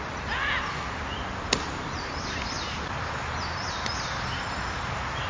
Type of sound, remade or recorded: recorded